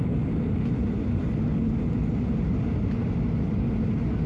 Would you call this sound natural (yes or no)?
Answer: yes